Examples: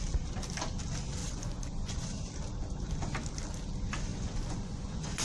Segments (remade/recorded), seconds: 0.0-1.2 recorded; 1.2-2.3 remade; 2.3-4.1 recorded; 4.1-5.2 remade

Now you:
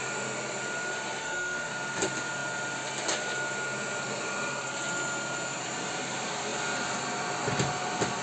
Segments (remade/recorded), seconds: 0.0-1.2 recorded; 1.2-1.7 remade; 1.7-8.2 recorded

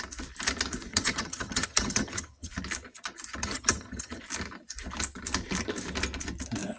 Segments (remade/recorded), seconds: 0.0-0.9 recorded; 0.9-2.5 remade; 2.5-3.4 recorded; 3.4-4.2 remade; 4.2-6.8 recorded

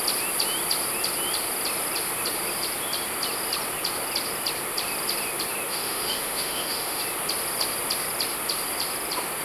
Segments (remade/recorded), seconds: 0.0-5.7 recorded; 5.7-7.0 remade; 7.0-9.4 recorded

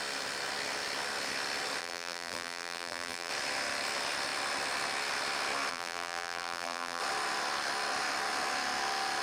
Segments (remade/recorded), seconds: 0.0-1.8 recorded; 1.8-3.3 remade; 3.3-5.7 recorded; 5.7-7.0 remade; 7.0-9.2 recorded

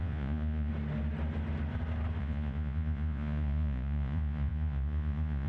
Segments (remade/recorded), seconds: 0.0-0.7 remade; 0.7-2.2 recorded; 2.2-5.5 remade

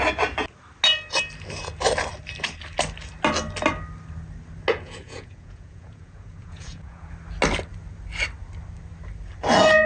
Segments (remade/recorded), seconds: 0.0-4.7 recorded; 4.7-7.1 remade; 7.1-9.9 recorded